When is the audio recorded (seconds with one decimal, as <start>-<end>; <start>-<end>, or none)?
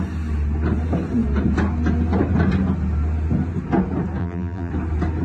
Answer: 0.0-4.2; 4.7-5.2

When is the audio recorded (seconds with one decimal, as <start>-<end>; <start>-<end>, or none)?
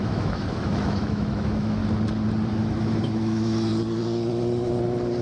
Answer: 1.8-2.5; 3.7-5.2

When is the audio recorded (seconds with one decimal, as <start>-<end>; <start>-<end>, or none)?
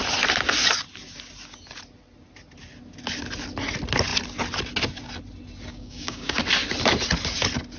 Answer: 0.0-5.7; 6.4-7.8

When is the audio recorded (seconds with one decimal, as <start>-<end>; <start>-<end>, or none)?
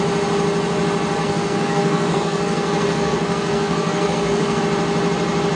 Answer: 0.0-1.2; 4.6-5.6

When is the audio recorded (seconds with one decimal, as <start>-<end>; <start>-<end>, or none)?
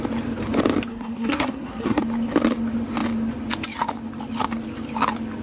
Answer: 0.0-0.9; 2.0-5.4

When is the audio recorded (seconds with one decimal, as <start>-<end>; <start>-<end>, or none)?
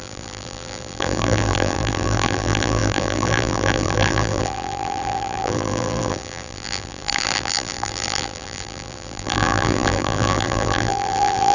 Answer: none